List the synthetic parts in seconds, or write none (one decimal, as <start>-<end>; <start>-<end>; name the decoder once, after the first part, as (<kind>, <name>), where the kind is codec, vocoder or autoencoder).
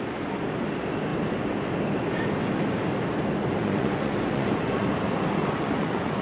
3.6-4.9 (vocoder, Vocos); 5.4-6.2